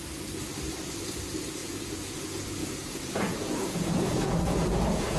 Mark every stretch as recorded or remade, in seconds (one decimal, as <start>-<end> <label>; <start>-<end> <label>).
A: 0.0-1.6 recorded; 1.6-2.2 remade; 2.2-2.6 recorded; 2.6-5.2 remade